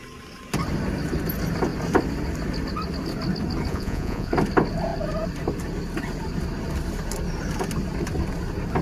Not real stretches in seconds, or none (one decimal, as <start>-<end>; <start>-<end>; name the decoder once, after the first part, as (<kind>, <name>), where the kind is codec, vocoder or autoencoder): 3.7-4.3 (vocoder, Vocos)